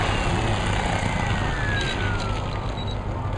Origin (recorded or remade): recorded